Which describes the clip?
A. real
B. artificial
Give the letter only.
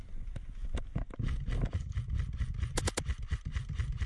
A